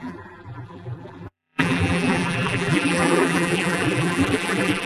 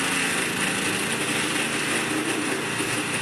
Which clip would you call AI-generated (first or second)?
first